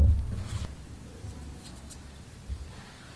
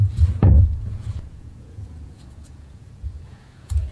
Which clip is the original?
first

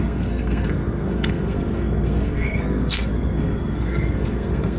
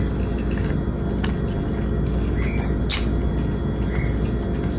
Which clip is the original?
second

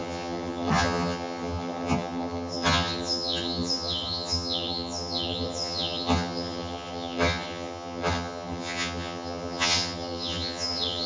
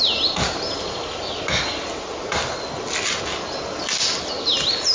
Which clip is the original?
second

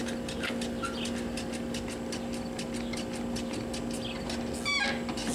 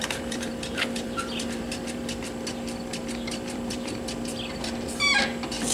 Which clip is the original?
first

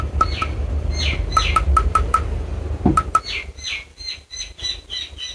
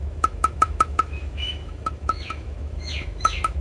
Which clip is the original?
first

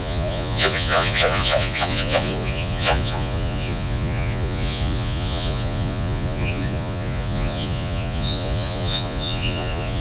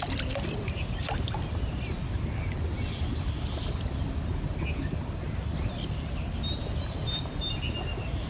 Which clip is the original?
second